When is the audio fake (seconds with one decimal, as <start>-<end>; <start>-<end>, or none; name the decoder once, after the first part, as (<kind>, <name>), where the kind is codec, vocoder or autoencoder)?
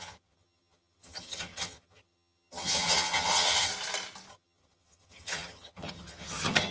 0.0-3.7 (vocoder, HiFi-GAN); 4.3-6.7